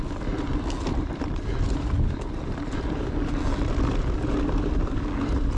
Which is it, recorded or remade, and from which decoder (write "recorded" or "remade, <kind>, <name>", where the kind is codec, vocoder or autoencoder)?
recorded